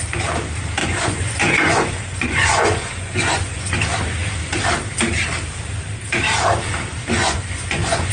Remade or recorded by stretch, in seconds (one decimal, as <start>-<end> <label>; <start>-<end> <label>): 0.0-0.8 recorded; 0.8-3.7 remade; 3.7-7.2 recorded; 7.2-8.1 remade